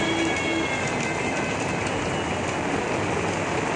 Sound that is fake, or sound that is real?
real